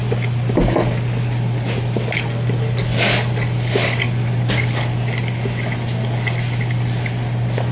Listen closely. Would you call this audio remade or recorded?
recorded